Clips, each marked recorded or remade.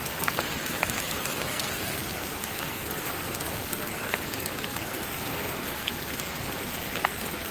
remade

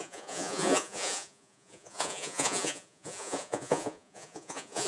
remade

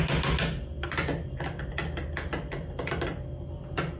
recorded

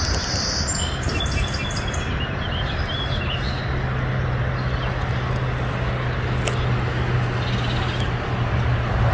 recorded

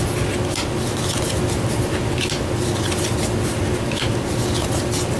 recorded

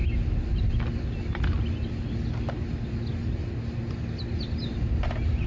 recorded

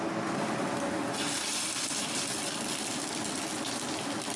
recorded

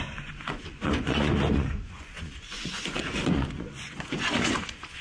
remade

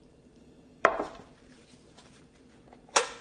remade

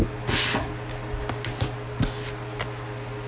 recorded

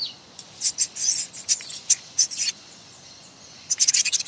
remade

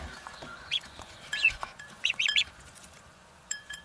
remade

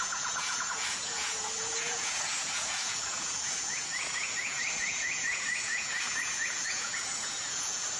remade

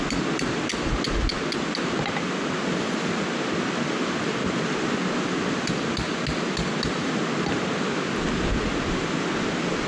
recorded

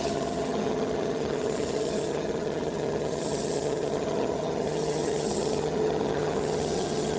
remade